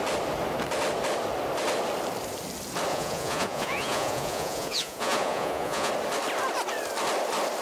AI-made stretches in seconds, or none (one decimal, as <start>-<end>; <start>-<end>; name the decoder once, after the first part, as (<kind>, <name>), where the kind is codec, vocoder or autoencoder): 2.9-5.9 (vocoder, Vocos)